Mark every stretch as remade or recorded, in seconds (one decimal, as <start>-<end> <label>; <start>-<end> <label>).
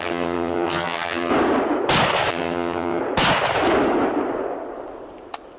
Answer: 0.0-1.3 remade; 1.3-2.3 recorded; 2.3-3.0 remade; 3.0-5.6 recorded